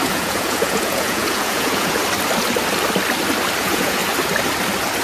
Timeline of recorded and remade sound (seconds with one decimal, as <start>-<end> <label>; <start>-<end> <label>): 0.0-2.0 remade; 2.0-3.6 recorded; 3.6-4.0 remade; 4.0-5.0 recorded